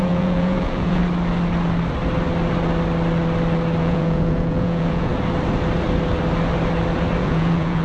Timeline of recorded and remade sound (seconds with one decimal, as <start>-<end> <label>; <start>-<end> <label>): 0.0-1.0 remade; 1.0-3.8 recorded; 3.8-5.1 remade; 5.1-7.2 recorded; 7.2-7.8 remade